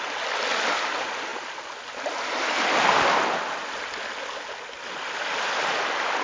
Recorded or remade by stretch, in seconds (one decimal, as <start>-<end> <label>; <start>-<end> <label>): 0.0-6.2 recorded